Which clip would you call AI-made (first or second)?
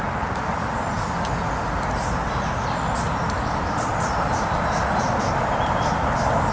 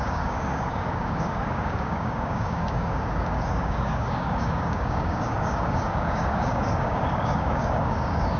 second